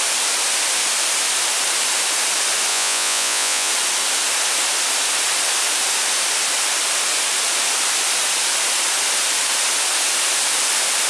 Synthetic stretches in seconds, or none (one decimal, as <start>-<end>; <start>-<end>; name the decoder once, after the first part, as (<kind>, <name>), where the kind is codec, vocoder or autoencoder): 2.7-3.7 (vocoder, Vocos)